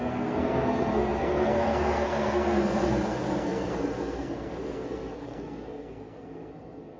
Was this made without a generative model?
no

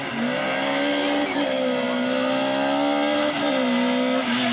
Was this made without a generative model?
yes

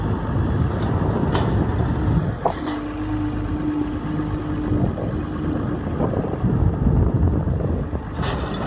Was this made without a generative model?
yes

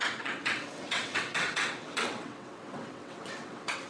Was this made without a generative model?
no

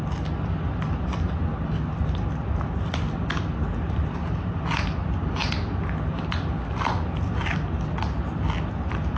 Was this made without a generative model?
yes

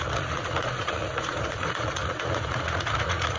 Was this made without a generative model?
no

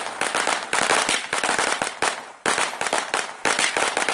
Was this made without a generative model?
no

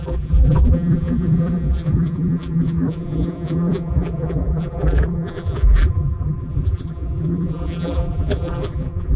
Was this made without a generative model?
no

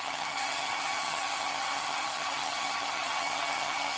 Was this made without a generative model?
no